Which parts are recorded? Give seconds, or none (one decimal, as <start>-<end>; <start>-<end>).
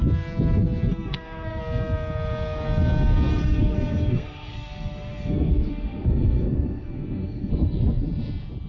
0.0-0.9; 1.6-3.3; 7.5-8.7